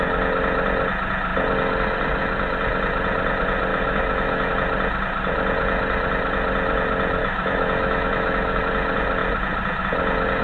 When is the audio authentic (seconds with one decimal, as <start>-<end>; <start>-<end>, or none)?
0.0-3.7; 4.5-7.2; 8.6-10.4